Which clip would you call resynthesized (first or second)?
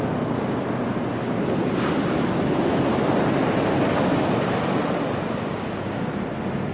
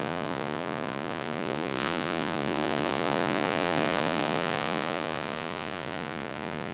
second